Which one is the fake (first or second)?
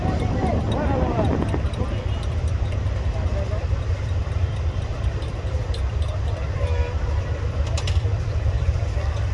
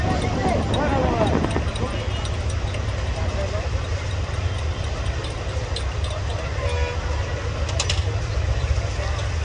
first